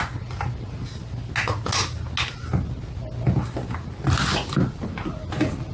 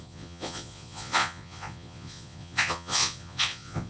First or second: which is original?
first